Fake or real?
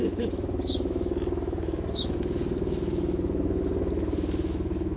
fake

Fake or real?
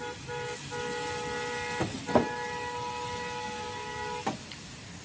real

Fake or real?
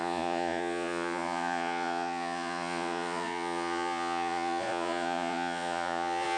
fake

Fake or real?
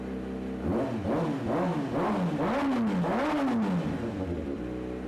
real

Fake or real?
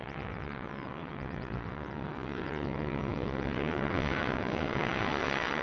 fake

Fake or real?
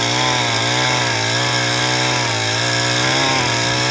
real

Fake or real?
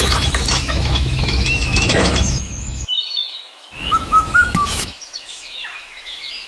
fake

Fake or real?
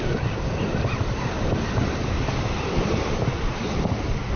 real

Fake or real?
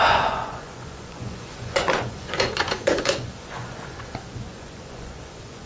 fake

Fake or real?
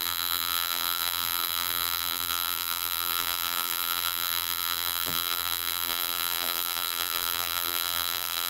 fake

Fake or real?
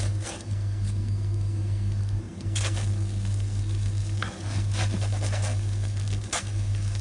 fake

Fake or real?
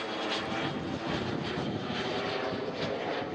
real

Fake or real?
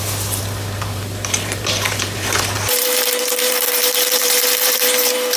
fake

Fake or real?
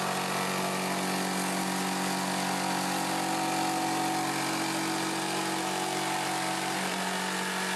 real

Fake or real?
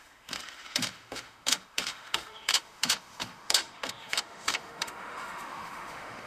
fake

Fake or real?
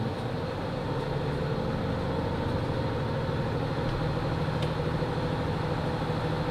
real